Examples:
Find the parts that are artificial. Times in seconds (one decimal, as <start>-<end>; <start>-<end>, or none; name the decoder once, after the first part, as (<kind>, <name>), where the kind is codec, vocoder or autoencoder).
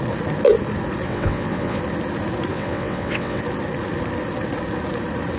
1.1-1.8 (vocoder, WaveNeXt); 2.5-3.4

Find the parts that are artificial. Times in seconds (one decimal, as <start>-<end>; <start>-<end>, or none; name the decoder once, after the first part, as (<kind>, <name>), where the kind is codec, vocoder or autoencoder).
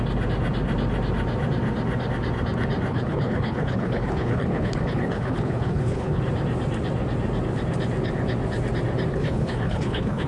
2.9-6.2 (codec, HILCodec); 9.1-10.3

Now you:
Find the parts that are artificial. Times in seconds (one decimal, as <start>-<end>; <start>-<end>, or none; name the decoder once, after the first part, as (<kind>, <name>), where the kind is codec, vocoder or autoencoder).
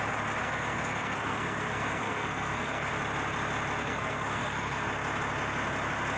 0.4-2.9 (codec, SNAC); 3.8-4.9